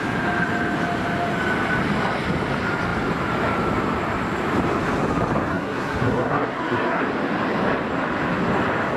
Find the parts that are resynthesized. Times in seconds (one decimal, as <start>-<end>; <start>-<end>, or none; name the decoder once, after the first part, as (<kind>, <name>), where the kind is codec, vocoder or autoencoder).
5.5-7.0 (codec, SNAC)